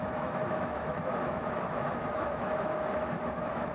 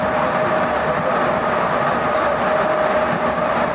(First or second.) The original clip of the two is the second